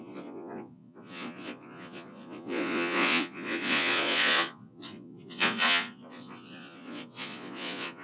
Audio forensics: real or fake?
fake